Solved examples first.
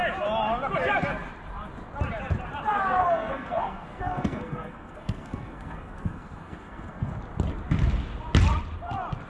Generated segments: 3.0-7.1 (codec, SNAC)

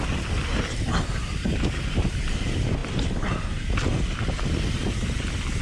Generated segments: none

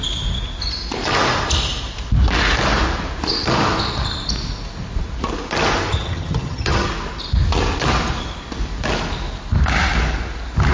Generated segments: 5.9-6.9 (vocoder, HiFi-GAN)

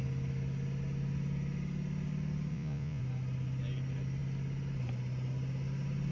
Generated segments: 2.5-3.0 (vocoder, Vocos)